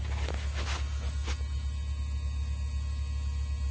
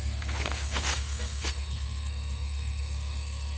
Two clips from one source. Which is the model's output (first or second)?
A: second